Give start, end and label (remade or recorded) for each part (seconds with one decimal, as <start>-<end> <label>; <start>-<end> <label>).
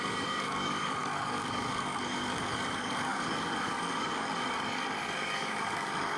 0.0-6.2 remade